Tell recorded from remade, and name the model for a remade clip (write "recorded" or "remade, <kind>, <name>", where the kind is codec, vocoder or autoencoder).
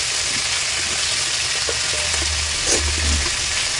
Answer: recorded